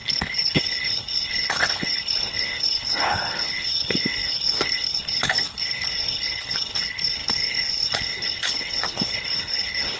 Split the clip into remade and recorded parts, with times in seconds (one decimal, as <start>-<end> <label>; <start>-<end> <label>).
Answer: 0.0-10.0 remade